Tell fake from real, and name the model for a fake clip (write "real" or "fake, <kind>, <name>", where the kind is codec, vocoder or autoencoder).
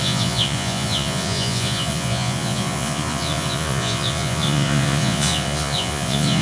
fake, vocoder, Vocos